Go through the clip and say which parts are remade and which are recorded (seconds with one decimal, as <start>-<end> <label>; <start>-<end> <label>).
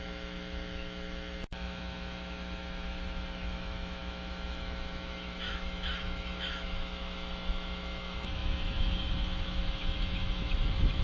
0.0-11.0 remade